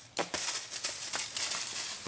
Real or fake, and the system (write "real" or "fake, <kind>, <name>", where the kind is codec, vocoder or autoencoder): real